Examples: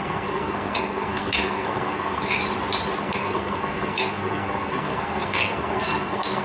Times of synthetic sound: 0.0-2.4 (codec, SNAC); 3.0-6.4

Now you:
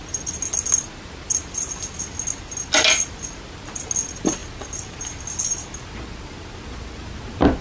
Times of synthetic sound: none

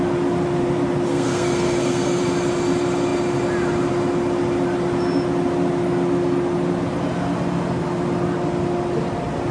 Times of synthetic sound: 1.1-2.2 (codec, SNAC)

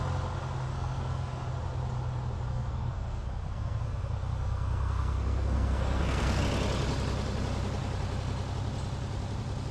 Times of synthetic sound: 0.7-1.5 (codec, SNAC); 2.5-6.4

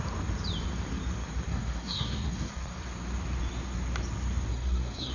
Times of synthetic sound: 1.5-2.5 (codec, SNAC); 4.5-5.1

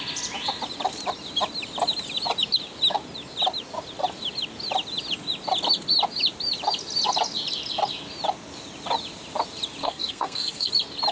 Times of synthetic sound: 9.8-10.7 (codec, SNAC)

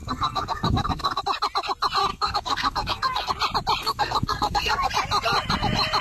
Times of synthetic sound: 0.0-1.2 (codec, SNAC); 2.1-3.3; 3.8-4.9

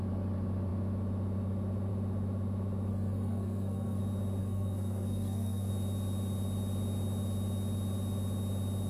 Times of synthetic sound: 2.9-4.0 (codec, SNAC); 4.4-5.7